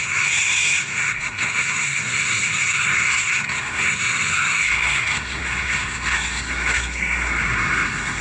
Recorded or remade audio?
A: remade